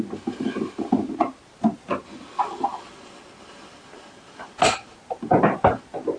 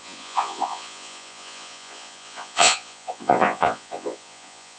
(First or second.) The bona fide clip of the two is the first